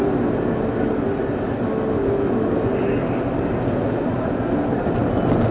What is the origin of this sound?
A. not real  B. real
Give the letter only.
B